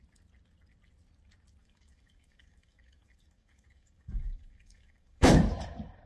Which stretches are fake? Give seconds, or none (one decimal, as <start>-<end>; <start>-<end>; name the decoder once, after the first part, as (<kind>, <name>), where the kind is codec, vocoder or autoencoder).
1.6-5.3 (codec, DAC)